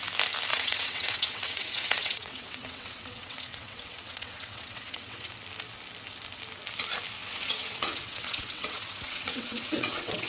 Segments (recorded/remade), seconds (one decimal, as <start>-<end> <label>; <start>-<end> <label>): 0.0-0.5 recorded; 0.5-5.3 remade; 5.3-7.2 recorded; 7.2-10.3 remade